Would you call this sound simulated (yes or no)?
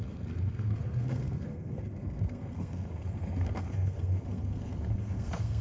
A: yes